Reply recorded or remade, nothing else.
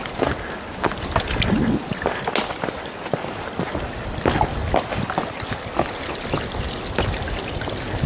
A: recorded